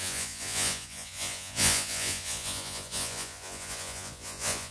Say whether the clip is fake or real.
fake